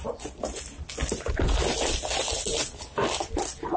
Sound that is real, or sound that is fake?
real